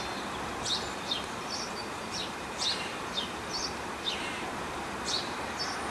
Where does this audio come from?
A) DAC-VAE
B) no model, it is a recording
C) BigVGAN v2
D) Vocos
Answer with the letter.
C